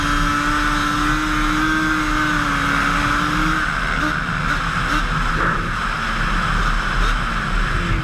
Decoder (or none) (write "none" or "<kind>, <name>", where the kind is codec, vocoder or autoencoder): none